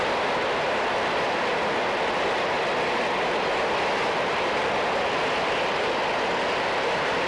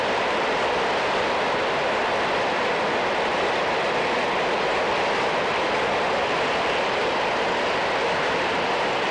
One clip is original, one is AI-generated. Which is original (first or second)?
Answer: first